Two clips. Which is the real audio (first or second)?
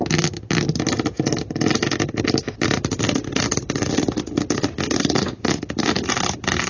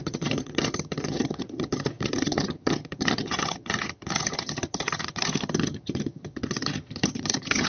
first